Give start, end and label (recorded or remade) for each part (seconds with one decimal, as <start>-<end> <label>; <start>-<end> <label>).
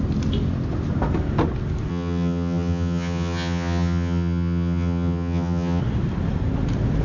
0.0-1.9 recorded; 1.9-5.8 remade; 5.8-7.0 recorded